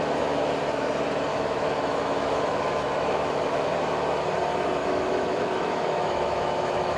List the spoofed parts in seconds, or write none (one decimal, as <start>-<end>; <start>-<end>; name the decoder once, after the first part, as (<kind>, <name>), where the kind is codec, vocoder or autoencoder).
1.3-3.7 (autoencoder, DAC-VAE); 4.8-7.0